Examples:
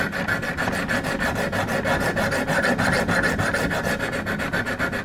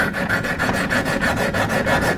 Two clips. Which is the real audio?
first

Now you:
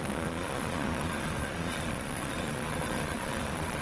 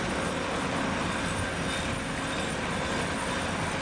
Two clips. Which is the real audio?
second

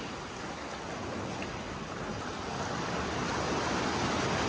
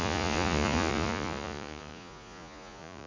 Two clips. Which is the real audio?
first